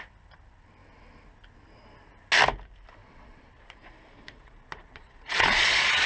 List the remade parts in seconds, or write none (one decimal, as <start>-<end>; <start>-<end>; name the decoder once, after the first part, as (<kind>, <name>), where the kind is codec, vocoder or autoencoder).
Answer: 3.0-6.1 (vocoder, Vocos)